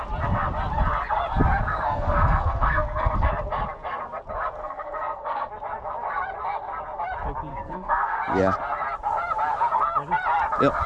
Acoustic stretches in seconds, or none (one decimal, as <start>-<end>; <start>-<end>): 0.0-1.7; 3.3-4.6; 5.5-7.5; 8.2-10.9